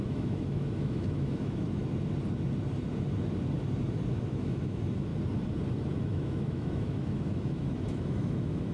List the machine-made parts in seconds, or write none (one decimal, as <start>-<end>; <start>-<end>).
0.0-1.8; 4.1-5.1; 6.0-8.7